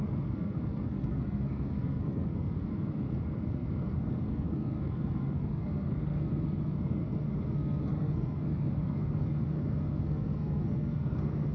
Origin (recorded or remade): remade